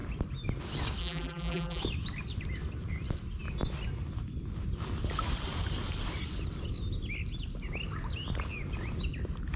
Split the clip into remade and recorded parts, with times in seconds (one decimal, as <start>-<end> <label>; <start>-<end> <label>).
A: 0.0-1.0 recorded; 1.0-1.8 remade; 1.8-9.6 recorded

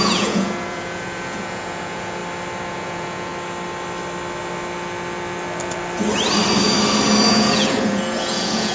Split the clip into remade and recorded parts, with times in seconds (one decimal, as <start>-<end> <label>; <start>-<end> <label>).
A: 0.0-2.2 remade; 2.2-2.7 recorded; 2.7-3.3 remade; 3.3-7.3 recorded; 7.3-8.7 remade

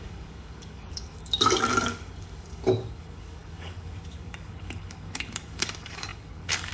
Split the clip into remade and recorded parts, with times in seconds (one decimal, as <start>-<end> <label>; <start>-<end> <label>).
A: 0.0-6.7 remade